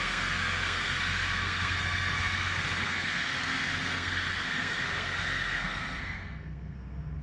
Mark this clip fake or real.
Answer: fake